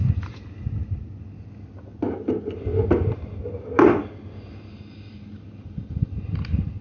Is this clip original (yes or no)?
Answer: yes